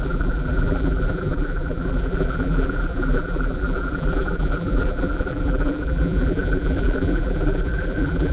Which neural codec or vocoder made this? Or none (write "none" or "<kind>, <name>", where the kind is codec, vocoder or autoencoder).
vocoder, BigVGAN v2